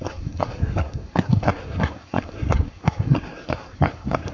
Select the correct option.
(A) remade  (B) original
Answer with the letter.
A